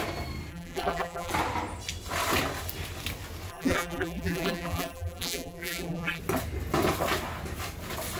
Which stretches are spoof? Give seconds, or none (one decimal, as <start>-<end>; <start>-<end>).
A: 0.5-1.3; 3.5-6.2